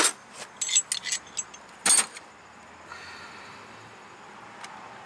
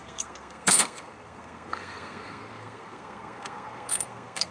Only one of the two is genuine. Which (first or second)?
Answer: first